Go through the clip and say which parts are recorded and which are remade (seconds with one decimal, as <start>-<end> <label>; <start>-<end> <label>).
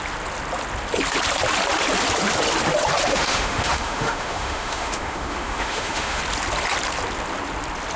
0.0-3.1 recorded; 3.1-6.2 remade; 6.2-8.0 recorded